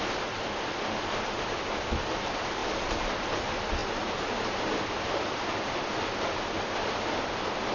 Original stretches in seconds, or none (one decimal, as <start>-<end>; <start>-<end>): 0.0-2.6; 3.4-7.7